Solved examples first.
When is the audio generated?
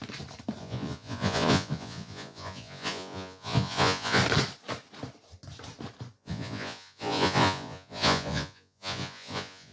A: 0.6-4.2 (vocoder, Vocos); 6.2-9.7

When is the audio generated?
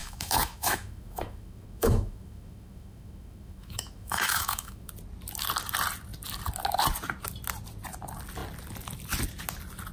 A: 0.0-4.9 (autoencoder, DAC-VAE)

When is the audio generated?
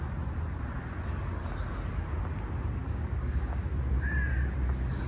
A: 2.8-3.6 (codec, DAC)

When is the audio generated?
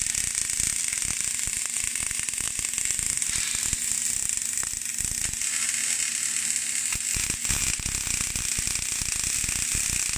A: none